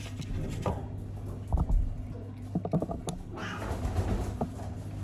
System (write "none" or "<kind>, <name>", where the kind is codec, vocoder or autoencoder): none